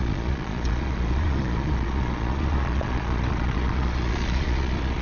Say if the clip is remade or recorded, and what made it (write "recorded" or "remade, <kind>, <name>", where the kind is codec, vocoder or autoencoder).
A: remade, vocoder, Vocos